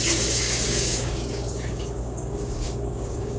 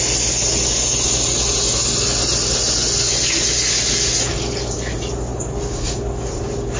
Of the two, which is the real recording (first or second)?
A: second